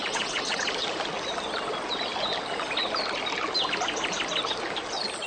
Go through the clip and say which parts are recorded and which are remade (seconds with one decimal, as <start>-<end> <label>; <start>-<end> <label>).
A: 0.0-0.6 remade; 0.6-5.3 recorded